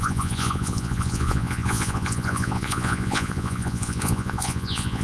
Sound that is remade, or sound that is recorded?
remade